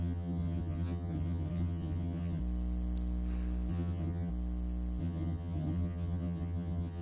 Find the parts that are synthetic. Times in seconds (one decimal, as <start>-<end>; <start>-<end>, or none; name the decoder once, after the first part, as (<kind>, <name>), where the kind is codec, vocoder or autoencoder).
0.0-2.4 (vocoder, HiFi-GAN); 3.7-4.3; 5.0-7.0